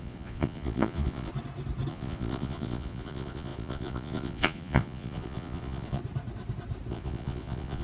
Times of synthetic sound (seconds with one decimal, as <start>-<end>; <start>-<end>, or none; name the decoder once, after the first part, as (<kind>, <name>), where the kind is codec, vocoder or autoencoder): 0.0-1.3 (vocoder, Vocos); 1.9-6.0; 6.9-7.8